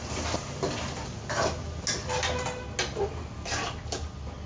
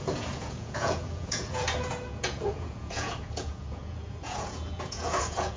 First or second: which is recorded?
first